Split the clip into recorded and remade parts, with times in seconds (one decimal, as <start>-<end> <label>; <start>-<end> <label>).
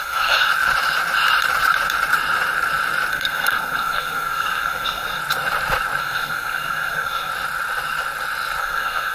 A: 0.0-0.5 remade; 0.5-3.1 recorded; 3.1-5.2 remade; 5.2-6.0 recorded; 6.0-7.3 remade; 7.3-8.6 recorded; 8.6-9.1 remade